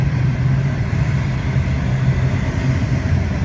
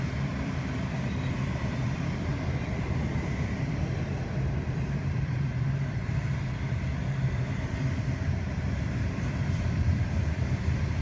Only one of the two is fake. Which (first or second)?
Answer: second